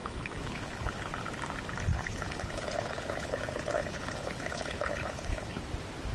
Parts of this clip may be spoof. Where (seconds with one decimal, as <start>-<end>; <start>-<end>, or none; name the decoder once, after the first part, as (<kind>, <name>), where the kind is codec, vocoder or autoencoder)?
0.0-1.1 (codec, HILCodec); 1.9-5.6